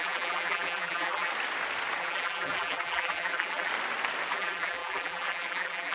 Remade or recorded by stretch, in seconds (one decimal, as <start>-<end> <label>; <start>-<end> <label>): 0.0-1.3 remade; 1.3-2.0 recorded; 2.0-3.7 remade; 3.7-4.3 recorded; 4.3-5.9 remade